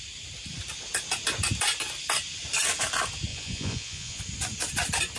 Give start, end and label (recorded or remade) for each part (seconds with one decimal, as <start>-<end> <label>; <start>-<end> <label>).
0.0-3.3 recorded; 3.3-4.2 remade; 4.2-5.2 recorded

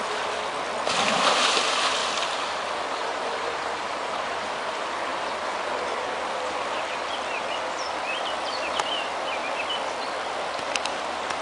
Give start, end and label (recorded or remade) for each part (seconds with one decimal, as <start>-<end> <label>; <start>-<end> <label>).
0.0-2.0 recorded; 2.0-3.9 remade; 3.9-9.4 recorded; 9.4-11.4 remade

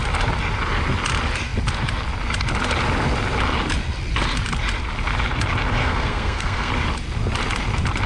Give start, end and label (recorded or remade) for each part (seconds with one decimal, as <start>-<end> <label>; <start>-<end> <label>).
0.0-5.8 recorded; 5.8-6.7 remade; 6.7-8.1 recorded

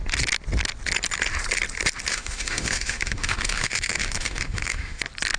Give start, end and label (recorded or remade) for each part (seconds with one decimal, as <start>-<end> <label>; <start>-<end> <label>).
0.0-2.1 recorded; 2.1-5.0 remade; 5.0-5.4 recorded